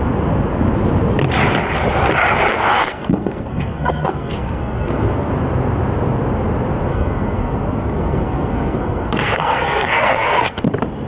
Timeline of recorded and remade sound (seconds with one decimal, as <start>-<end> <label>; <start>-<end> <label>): 0.0-2.5 recorded; 2.5-5.3 remade; 5.3-6.9 recorded; 6.9-10.6 remade; 10.6-11.1 recorded

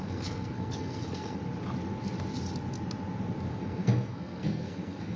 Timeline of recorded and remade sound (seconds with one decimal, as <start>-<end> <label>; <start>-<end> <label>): 0.0-1.4 remade; 1.4-3.5 recorded; 3.5-5.2 remade

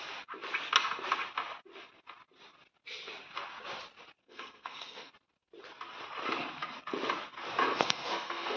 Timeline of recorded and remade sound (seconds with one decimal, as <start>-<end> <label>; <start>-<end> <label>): 0.0-4.2 recorded; 4.2-5.1 remade; 5.1-7.7 recorded; 7.7-8.6 remade

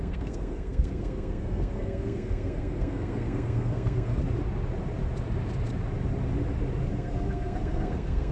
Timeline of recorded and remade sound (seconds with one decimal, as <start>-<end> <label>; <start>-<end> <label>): 0.0-4.2 remade; 4.2-6.9 recorded; 6.9-8.3 remade

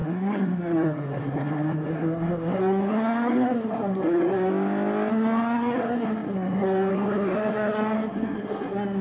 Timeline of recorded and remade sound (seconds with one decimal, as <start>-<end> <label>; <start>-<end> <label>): 0.0-4.5 remade; 4.5-5.1 recorded; 5.1-9.0 remade